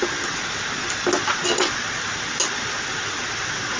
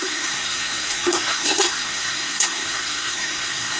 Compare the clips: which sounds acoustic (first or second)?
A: first